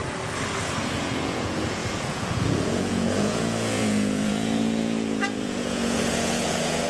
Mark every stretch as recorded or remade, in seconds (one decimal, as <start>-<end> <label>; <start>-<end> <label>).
0.0-0.8 recorded; 0.8-6.9 remade